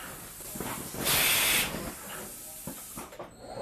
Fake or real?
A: real